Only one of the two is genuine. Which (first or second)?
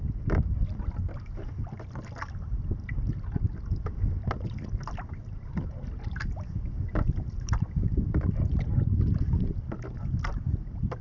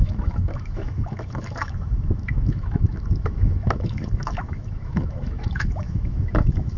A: first